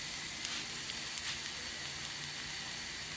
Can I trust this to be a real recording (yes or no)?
yes